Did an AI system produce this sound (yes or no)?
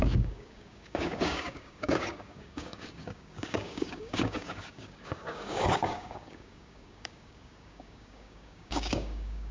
yes